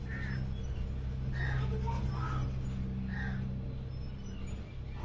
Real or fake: real